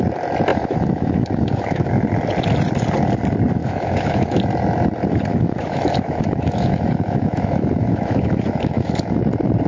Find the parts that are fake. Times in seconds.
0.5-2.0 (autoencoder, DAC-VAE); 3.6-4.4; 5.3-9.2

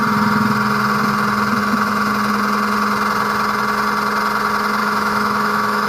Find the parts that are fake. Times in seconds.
1.6-2.1 (autoencoder, DAC-VAE); 4.8-5.9

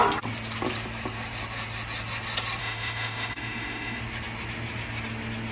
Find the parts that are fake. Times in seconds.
2.6-4.0 (autoencoder, DAC-VAE)

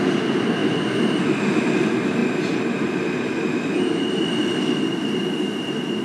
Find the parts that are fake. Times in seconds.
none